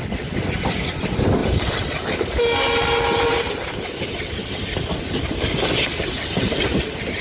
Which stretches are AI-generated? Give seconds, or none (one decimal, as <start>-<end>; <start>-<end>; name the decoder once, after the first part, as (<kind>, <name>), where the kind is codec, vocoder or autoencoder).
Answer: none